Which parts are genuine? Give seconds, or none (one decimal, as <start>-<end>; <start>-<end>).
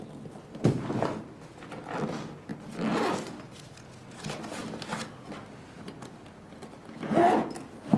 0.0-8.0